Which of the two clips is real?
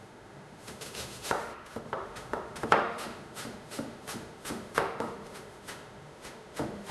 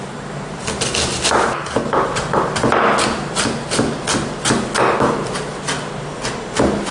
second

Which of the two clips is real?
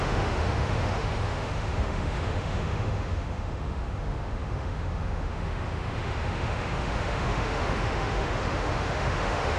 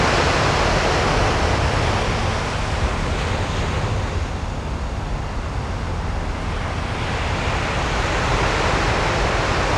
second